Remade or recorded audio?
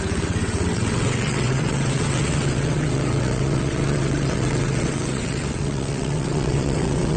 remade